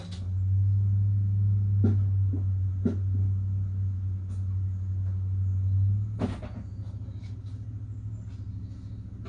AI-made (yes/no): no